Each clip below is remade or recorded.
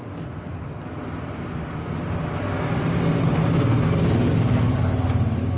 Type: recorded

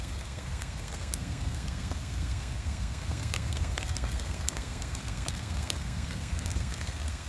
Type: remade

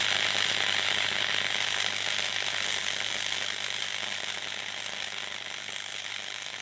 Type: recorded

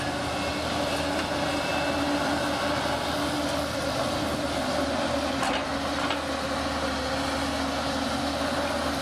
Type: recorded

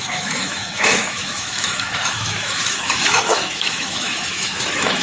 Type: remade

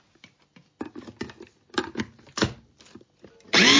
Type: recorded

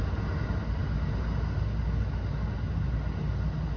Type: recorded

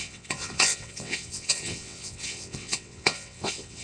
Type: remade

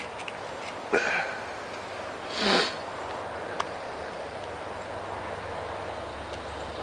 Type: recorded